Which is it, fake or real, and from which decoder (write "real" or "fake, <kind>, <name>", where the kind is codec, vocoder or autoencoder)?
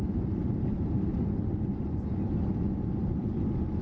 real